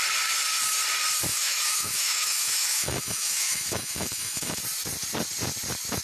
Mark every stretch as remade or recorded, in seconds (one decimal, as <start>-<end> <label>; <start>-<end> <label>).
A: 0.0-1.3 recorded; 1.3-4.6 remade; 4.6-6.0 recorded